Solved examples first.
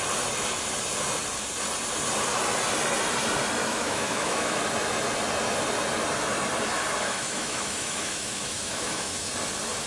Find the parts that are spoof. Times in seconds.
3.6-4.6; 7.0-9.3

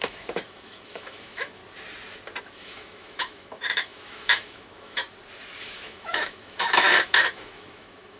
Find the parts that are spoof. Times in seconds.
0.0-1.6; 2.4-5.0; 5.6-8.2

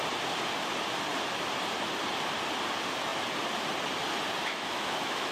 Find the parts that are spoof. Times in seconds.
4.4-5.3

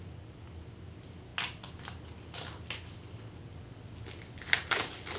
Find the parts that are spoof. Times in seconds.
none

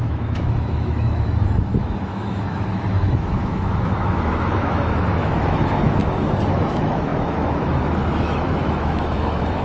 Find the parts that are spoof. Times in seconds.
0.0-6.0; 6.5-9.6

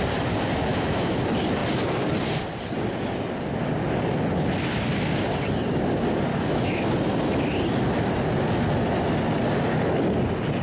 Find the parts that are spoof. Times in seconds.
0.7-1.2; 6.3-6.9

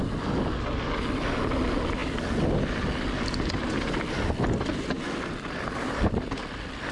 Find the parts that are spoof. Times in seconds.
none

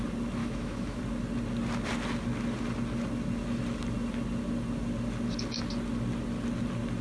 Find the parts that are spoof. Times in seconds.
0.4-1.0